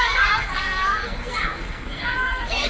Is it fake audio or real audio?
fake